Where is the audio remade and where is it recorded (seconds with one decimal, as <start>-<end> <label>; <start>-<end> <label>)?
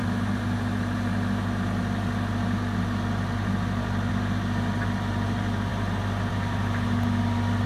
0.0-4.1 recorded; 4.1-7.7 remade